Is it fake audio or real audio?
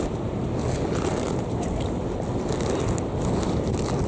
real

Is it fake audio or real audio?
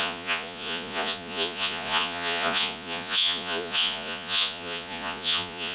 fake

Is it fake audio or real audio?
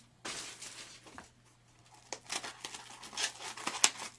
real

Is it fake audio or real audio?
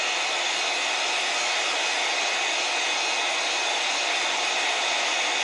real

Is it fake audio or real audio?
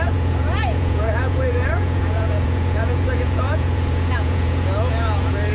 fake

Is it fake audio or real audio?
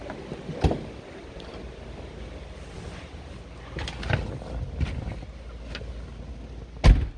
real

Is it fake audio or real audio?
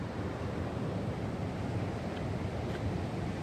real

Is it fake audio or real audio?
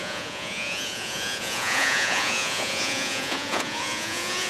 fake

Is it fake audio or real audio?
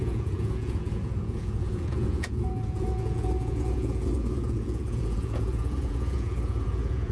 fake